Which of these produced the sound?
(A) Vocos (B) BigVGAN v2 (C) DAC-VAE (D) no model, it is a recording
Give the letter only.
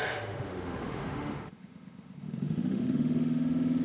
C